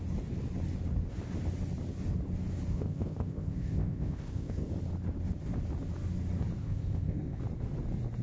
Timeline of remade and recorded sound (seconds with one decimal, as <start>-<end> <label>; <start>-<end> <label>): 0.0-2.7 recorded; 2.7-4.7 remade; 4.7-6.6 recorded; 6.6-7.4 remade; 7.4-8.2 recorded